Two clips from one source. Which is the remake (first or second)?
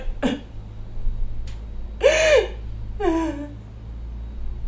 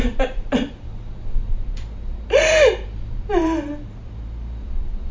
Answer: second